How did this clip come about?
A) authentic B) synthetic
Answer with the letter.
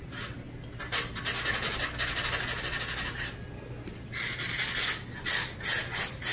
A